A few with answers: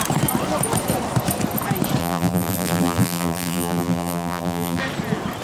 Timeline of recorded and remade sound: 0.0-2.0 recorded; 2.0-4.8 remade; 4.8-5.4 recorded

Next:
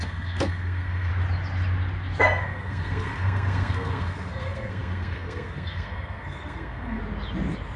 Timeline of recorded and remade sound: 0.0-1.1 remade; 1.1-2.2 recorded; 2.2-7.0 remade; 7.0-7.8 recorded

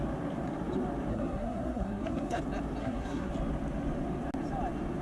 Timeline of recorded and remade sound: 0.0-1.1 recorded; 1.1-2.4 remade; 2.4-2.8 recorded; 2.8-3.3 remade; 3.3-5.0 recorded

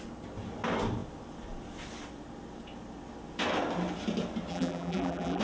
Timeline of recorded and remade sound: 0.0-4.5 recorded; 4.5-5.4 remade

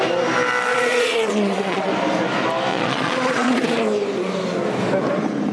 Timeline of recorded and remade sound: 0.0-0.7 recorded; 0.7-1.9 remade; 1.9-2.7 recorded; 2.7-3.8 remade; 3.8-5.5 recorded

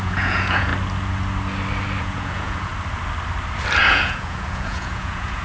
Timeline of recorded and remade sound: 0.0-0.7 remade; 0.7-2.0 recorded; 2.0-2.7 remade; 2.7-3.8 recorded; 3.8-5.4 remade